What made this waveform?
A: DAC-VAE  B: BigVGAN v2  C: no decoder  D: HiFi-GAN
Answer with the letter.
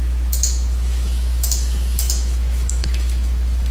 A